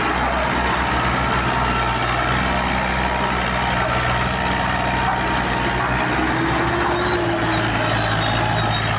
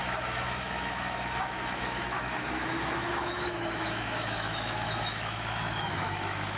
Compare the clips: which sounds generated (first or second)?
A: second